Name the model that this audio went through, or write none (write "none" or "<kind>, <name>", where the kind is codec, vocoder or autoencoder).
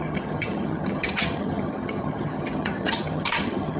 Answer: vocoder, HiFi-GAN